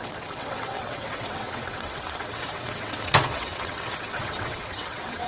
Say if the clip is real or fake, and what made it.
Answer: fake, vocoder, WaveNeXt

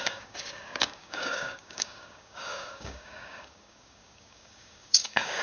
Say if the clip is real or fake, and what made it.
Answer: fake, codec, DAC